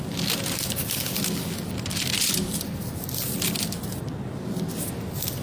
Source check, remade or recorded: recorded